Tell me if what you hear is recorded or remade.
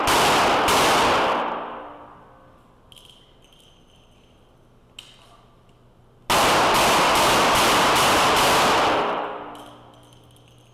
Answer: recorded